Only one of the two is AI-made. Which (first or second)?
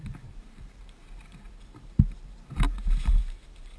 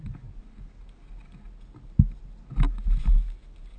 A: first